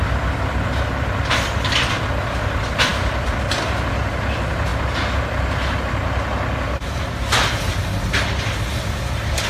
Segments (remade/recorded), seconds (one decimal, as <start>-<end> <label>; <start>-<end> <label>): 0.0-9.5 recorded